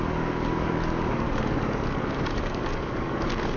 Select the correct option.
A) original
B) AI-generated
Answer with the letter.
B